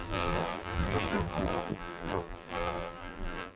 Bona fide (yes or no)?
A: no